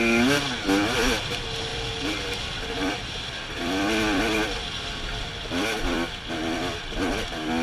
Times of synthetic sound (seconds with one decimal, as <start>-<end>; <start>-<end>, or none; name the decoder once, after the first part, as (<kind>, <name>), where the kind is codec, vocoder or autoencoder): 1.7-6.3 (vocoder, BigVGAN v2)